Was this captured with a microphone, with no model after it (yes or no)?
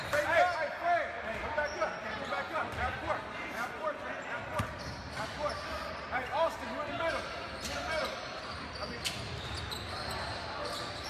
yes